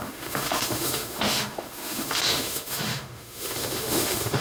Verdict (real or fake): fake